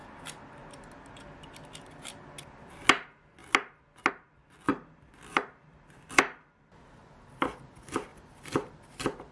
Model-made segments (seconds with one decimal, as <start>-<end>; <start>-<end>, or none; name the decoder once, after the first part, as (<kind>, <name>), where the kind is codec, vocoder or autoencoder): 4.7-6.7 (vocoder, BigVGAN v2); 8.1-8.7